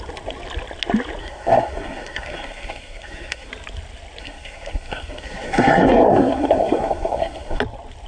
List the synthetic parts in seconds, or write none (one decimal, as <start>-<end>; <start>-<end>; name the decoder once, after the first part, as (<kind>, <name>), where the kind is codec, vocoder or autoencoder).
1.2-3.5 (codec, SNAC); 4.2-7.6